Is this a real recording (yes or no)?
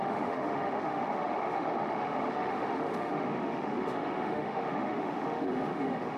no